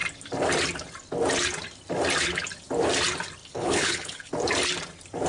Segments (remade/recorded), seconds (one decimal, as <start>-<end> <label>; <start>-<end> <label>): 0.0-3.4 recorded; 3.4-4.3 remade; 4.3-5.3 recorded